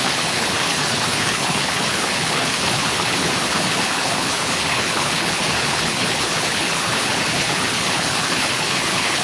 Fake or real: fake